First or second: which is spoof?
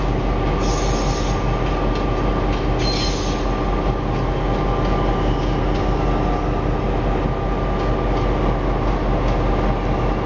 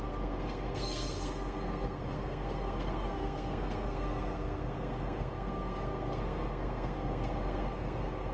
second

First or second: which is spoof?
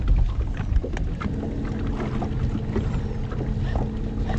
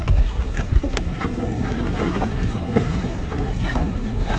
second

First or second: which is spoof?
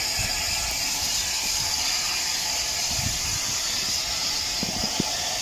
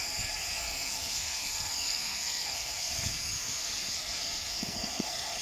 second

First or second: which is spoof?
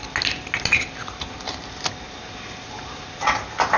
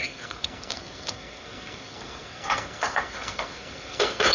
second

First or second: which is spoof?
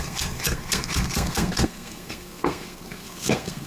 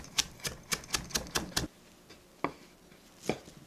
first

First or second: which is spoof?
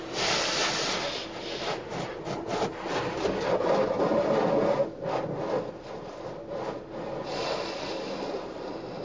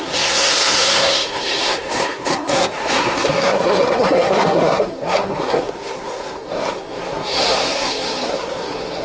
second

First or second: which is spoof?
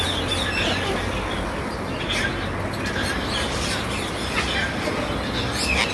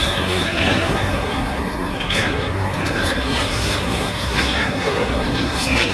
second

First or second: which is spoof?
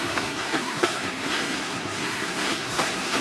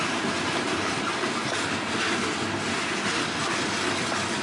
first